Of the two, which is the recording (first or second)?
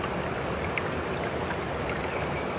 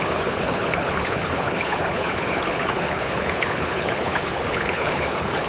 first